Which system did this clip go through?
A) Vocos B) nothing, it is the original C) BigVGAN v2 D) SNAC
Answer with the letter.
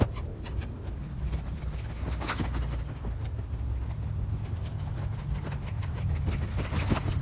B